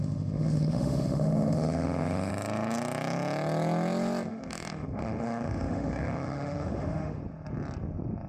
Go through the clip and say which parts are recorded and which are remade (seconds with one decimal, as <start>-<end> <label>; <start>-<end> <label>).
0.0-2.3 remade; 2.3-4.3 recorded; 4.3-7.2 remade; 7.2-8.3 recorded